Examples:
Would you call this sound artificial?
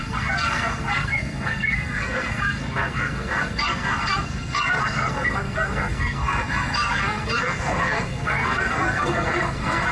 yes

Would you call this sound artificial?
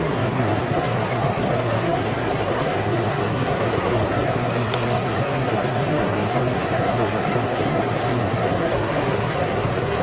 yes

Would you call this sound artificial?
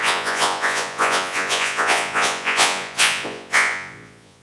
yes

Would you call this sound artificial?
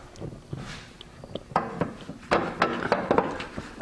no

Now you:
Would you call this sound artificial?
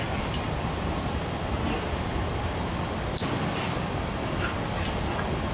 no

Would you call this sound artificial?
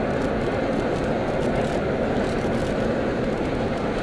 no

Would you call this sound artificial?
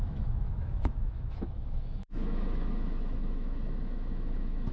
yes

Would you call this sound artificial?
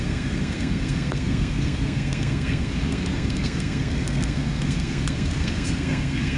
yes